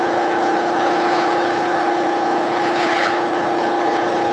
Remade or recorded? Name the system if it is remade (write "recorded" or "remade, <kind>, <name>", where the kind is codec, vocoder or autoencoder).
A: remade, codec, HILCodec